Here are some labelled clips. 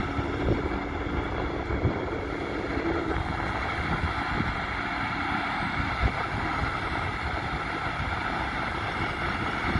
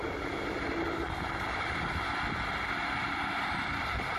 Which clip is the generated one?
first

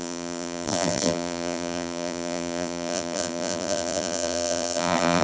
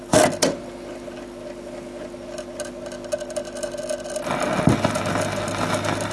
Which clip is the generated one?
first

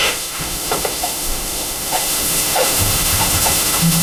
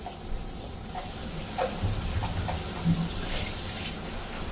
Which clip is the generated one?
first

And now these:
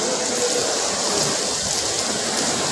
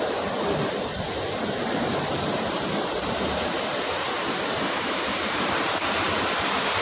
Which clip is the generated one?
second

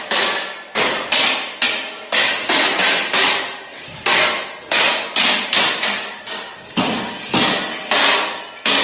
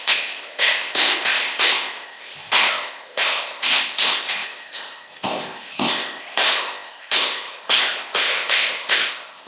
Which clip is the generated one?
second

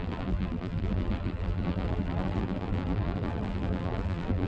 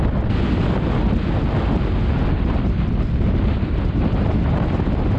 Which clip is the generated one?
first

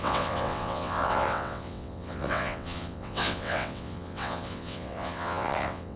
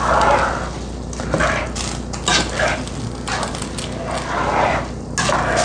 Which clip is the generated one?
first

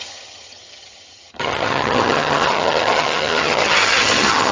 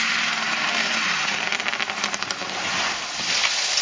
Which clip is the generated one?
first